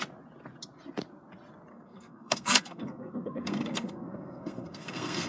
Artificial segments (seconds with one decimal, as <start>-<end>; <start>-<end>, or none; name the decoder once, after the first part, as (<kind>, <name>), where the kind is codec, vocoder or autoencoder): 1.7-5.3 (codec, SNAC)